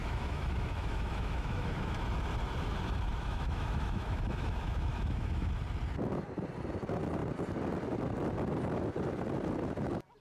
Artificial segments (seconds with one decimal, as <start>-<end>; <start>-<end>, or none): 0.0-2.0; 3.1-5.5